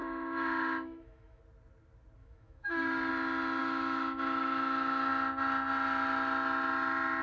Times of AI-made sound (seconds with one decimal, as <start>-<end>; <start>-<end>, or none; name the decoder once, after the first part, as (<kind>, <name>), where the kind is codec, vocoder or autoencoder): 0.0-1.4 (autoencoder, DAC-VAE); 2.2-3.1; 3.6-5.1